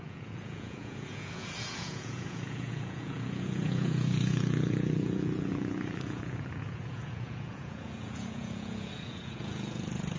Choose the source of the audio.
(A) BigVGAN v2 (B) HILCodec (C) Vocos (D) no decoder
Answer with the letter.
C